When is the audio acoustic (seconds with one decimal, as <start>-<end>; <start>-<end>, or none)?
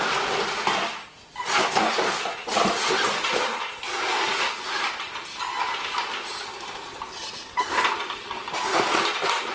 0.0-9.5